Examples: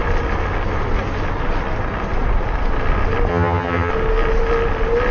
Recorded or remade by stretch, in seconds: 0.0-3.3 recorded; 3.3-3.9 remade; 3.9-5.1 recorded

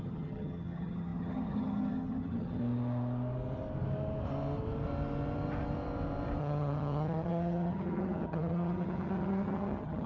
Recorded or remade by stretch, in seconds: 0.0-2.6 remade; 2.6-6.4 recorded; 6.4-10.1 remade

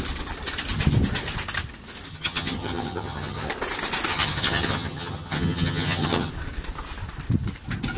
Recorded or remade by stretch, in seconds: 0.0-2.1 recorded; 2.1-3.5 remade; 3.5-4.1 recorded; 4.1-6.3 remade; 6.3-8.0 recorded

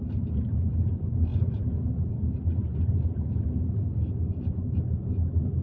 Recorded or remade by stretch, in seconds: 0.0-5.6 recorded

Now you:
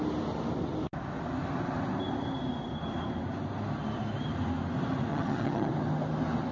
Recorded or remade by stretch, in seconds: 0.0-5.1 recorded; 5.1-5.7 remade; 5.7-6.5 recorded

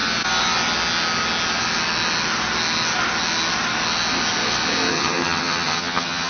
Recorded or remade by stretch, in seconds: 0.0-4.9 recorded; 4.9-6.3 remade